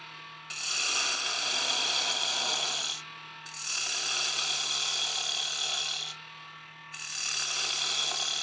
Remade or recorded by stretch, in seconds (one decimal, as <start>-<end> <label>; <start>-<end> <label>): 0.0-8.4 recorded